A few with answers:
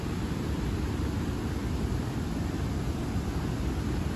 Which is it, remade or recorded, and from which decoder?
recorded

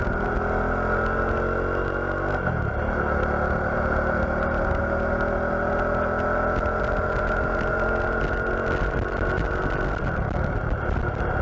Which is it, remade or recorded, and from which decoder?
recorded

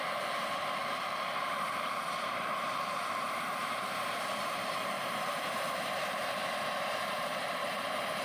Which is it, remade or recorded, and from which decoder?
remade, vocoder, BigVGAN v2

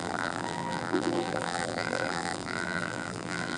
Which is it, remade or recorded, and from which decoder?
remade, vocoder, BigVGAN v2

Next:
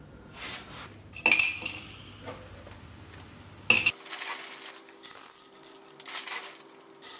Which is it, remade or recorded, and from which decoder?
recorded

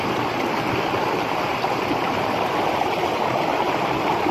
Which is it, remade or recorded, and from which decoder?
recorded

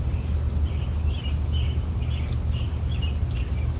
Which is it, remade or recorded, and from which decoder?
recorded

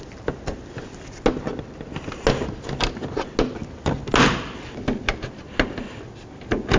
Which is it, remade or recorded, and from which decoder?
recorded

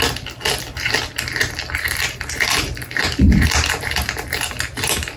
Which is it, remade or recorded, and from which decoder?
remade, vocoder, BigVGAN v2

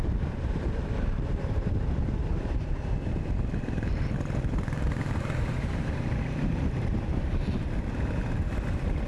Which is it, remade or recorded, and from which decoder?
remade, vocoder, BigVGAN v2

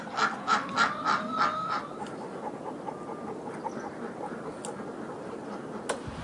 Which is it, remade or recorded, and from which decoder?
recorded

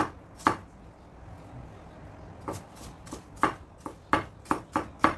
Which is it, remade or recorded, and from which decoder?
recorded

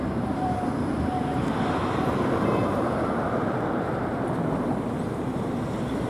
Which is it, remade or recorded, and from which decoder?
remade, vocoder, BigVGAN v2